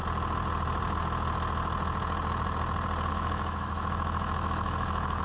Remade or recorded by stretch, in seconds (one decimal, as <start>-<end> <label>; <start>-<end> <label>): 0.0-3.1 recorded; 3.1-5.2 remade